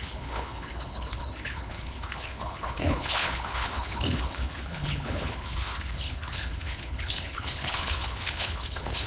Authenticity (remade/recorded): remade